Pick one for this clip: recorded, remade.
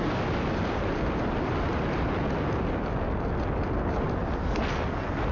recorded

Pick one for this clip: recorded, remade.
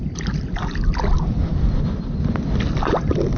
recorded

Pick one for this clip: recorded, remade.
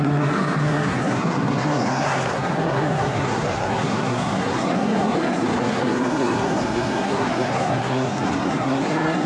remade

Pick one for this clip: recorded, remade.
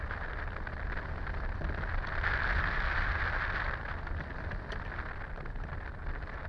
recorded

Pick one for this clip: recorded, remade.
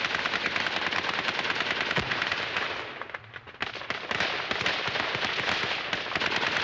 recorded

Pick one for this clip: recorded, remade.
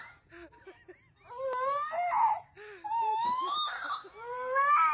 recorded